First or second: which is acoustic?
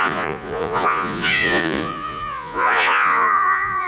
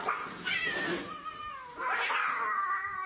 second